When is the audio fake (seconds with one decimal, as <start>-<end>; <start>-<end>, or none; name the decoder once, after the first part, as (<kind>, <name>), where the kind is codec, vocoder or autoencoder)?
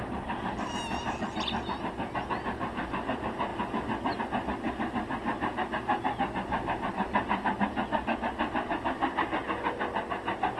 none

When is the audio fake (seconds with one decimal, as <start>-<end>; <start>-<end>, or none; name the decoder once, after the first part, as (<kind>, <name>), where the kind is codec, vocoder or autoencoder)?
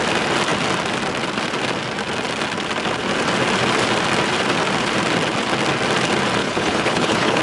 6.4-7.4 (codec, HILCodec)